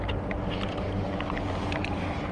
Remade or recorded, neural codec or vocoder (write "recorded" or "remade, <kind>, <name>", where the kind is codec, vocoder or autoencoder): remade, vocoder, BigVGAN v2